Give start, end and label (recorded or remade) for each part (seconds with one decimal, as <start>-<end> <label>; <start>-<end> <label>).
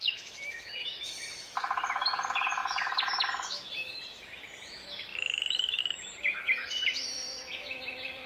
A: 0.0-8.3 remade